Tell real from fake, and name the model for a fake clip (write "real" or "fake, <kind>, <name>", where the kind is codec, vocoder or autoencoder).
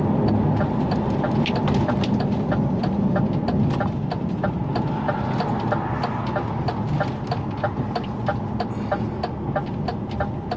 real